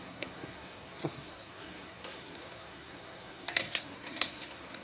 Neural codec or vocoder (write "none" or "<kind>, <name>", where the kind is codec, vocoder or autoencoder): codec, SNAC